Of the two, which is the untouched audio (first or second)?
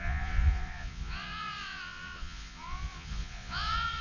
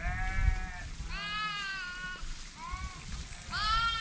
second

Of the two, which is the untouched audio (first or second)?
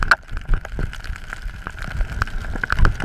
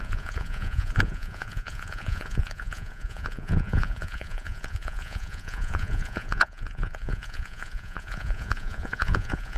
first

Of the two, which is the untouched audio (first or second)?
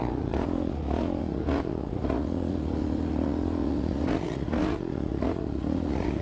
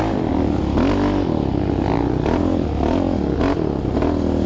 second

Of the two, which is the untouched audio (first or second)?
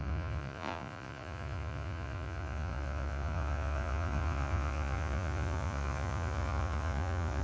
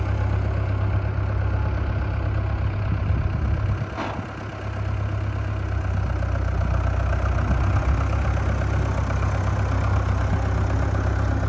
second